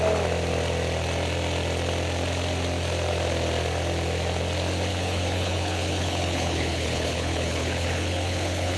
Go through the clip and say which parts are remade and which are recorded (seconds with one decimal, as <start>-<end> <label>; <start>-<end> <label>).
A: 0.0-4.9 recorded; 4.9-8.8 remade